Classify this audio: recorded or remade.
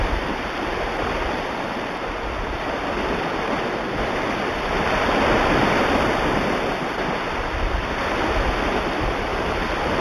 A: recorded